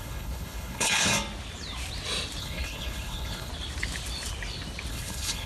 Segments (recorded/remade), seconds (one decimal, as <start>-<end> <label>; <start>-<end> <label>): 0.0-1.1 remade; 1.1-2.4 recorded; 2.4-3.5 remade; 3.5-4.9 recorded; 4.9-5.5 remade